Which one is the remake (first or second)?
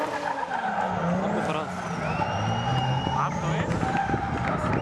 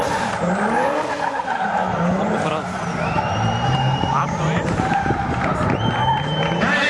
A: second